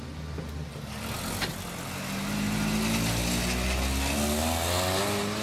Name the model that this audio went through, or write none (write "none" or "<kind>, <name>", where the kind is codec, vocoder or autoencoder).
none